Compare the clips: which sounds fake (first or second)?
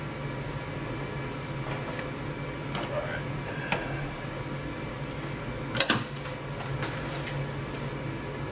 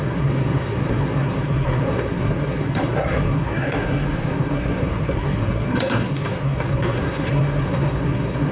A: second